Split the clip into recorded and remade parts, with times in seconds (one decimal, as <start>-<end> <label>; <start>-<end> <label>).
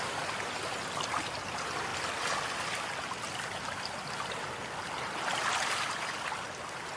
0.0-7.0 recorded